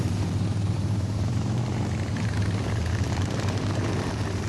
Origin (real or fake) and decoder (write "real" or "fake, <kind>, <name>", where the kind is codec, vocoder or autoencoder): fake, vocoder, BigVGAN v2